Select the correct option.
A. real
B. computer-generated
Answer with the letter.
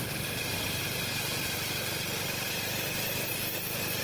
A